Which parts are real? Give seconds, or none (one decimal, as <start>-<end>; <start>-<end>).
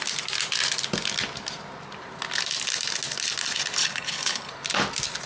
0.0-3.8; 4.5-5.3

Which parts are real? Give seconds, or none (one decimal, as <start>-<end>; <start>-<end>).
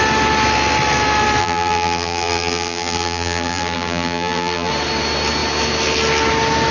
0.0-1.4; 4.7-6.7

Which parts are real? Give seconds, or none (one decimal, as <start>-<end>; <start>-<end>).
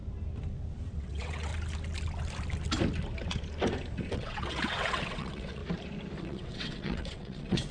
0.0-0.9; 1.5-4.1; 5.6-6.2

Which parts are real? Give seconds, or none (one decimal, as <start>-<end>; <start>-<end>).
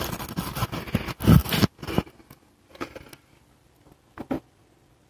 0.0-5.1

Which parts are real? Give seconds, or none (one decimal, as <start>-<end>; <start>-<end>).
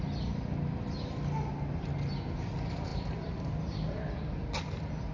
0.0-5.1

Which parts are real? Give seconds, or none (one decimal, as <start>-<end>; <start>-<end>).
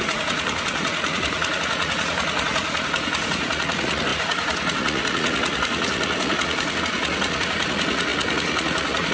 none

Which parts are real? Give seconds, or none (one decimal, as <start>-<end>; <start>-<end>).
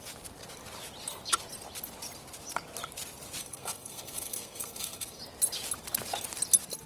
0.0-3.4; 5.2-6.9